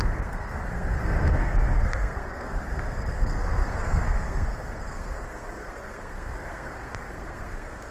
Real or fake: fake